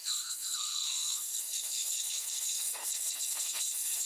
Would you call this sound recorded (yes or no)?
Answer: no